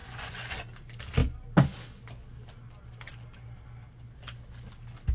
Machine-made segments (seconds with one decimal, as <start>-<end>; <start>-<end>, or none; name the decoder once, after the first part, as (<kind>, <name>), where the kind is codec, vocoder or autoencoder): 0.0-0.5 (vocoder, Vocos)